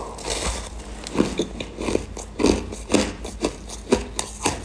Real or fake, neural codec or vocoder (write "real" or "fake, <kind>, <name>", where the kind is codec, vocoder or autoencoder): real